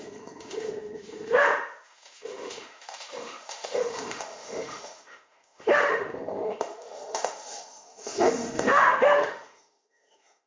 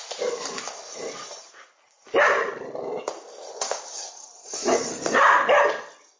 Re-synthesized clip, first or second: first